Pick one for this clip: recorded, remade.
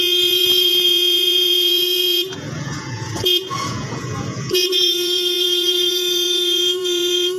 remade